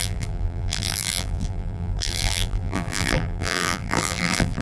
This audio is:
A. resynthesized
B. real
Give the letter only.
A